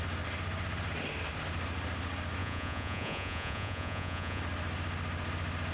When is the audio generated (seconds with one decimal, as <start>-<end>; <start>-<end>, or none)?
2.4-4.4